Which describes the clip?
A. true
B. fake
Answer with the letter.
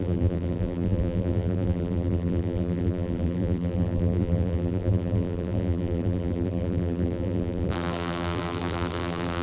B